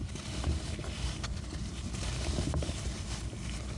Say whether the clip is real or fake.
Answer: fake